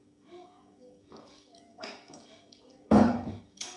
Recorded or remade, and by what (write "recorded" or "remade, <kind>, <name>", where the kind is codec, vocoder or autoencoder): remade, codec, DAC